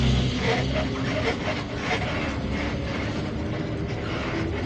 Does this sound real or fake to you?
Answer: real